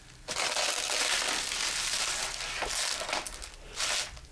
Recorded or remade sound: recorded